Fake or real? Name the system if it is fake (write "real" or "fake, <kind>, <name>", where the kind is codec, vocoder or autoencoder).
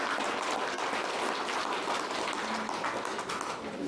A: real